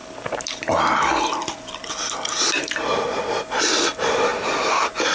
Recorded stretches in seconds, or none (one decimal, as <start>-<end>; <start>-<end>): 1.8-2.6; 4.3-5.1